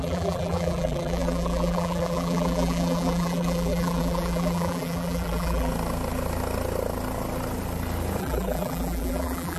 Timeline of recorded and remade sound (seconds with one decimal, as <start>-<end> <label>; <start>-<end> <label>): 0.0-5.7 remade; 5.7-8.2 recorded; 8.2-9.6 remade

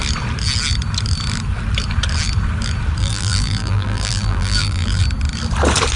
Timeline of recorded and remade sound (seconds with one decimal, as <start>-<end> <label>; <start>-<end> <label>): 0.0-3.0 recorded; 3.0-5.0 remade; 5.0-6.0 recorded

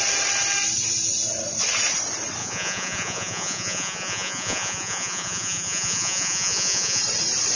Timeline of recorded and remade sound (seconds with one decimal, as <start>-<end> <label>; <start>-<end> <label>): 0.0-2.4 recorded; 2.4-7.0 remade; 7.0-7.6 recorded

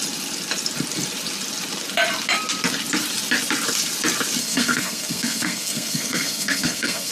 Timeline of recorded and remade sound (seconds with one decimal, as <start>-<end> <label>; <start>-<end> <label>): 0.0-4.4 recorded; 4.4-7.1 remade

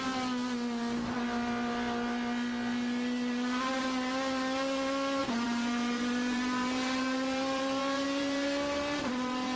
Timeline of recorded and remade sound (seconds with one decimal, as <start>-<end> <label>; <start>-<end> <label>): 0.0-5.2 recorded; 5.2-9.6 remade